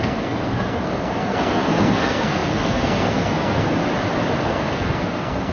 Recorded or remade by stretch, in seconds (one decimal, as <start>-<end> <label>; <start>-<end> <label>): 0.0-3.8 remade; 3.8-4.4 recorded; 4.4-5.5 remade